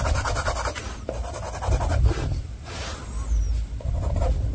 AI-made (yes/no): no